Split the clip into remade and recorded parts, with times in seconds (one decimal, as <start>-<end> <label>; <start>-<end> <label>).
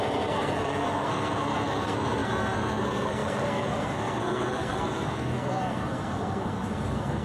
0.0-7.2 remade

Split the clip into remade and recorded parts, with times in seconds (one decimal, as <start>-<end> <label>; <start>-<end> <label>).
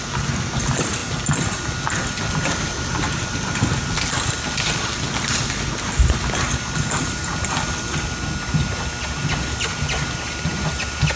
0.0-11.2 recorded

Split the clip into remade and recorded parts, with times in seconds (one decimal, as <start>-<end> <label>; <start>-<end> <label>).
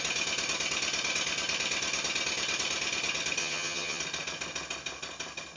0.0-3.4 recorded; 3.4-4.0 remade; 4.0-5.6 recorded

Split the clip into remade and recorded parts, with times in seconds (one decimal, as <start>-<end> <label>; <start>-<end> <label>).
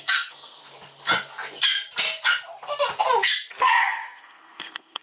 0.0-0.6 remade; 0.6-3.6 recorded; 3.6-5.0 remade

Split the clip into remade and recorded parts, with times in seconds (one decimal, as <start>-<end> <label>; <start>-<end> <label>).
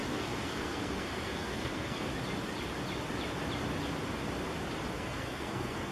0.0-2.1 remade; 2.1-4.9 recorded; 4.9-5.9 remade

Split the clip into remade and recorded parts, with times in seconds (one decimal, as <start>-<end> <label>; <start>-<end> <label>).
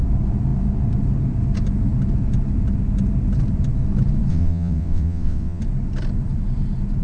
0.0-4.3 recorded; 4.3-5.6 remade; 5.6-7.0 recorded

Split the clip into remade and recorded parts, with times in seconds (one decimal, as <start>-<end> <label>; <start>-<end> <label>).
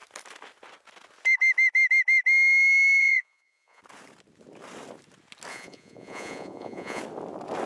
0.0-3.0 recorded; 3.0-3.8 remade; 3.8-5.5 recorded; 5.5-7.0 remade; 7.0-7.7 recorded